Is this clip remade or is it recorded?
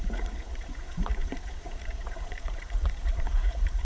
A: remade